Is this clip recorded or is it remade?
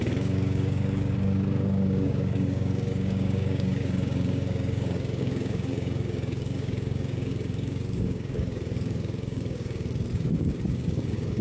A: remade